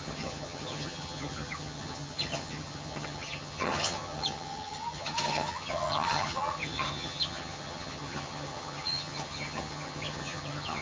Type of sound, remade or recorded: remade